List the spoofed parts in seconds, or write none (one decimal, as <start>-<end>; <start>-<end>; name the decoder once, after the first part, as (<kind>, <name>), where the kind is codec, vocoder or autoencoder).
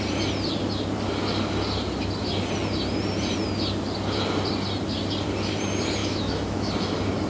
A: 6.0-6.7 (autoencoder, DAC-VAE)